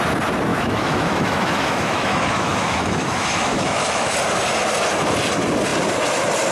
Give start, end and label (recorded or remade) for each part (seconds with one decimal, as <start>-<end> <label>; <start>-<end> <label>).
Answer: 0.0-0.5 recorded; 0.5-4.1 remade; 4.1-6.5 recorded